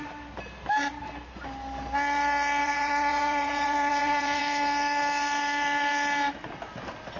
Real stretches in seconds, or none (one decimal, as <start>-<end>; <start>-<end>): 0.0-2.6; 4.4-7.2